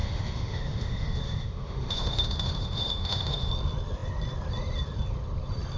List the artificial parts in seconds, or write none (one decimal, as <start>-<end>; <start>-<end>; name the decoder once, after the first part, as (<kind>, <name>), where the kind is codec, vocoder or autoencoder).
0.0-3.5 (autoencoder, DAC-VAE)